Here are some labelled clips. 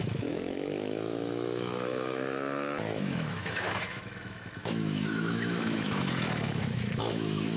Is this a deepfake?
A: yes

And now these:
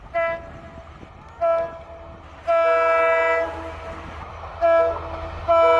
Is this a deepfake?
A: no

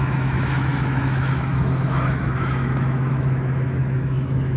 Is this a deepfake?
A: yes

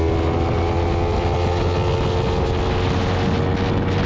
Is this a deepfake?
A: no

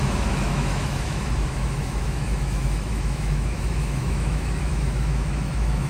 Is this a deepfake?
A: yes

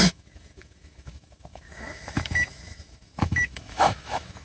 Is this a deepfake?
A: yes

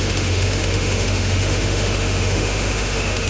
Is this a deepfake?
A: yes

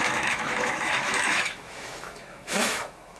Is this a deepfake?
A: yes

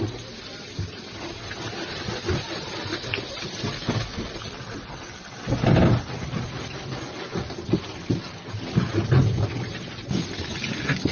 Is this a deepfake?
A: no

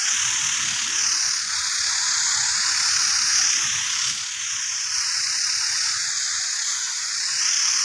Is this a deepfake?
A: no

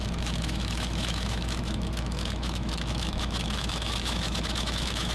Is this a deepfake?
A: yes